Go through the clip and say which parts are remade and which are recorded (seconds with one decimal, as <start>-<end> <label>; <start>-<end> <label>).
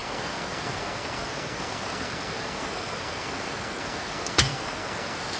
0.0-5.4 remade